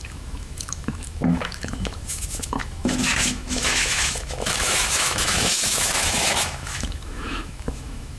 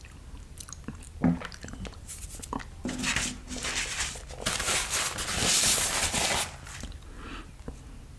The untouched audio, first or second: second